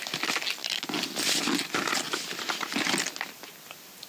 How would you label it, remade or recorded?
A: recorded